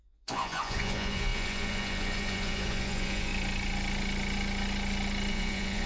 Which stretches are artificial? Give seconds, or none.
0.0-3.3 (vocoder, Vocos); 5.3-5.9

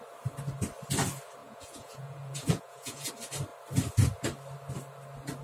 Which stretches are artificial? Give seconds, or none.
1.4-3.1 (vocoder, Vocos)

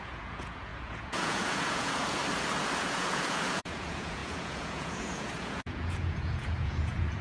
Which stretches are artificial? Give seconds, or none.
0.0-2.2 (vocoder, Vocos); 2.8-7.2

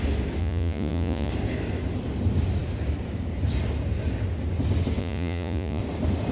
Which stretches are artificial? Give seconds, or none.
0.4-1.3 (vocoder, Vocos); 5.0-5.8